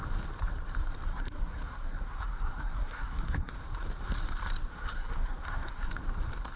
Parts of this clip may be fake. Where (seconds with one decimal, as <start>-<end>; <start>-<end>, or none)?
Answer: 1.1-3.5; 4.7-5.9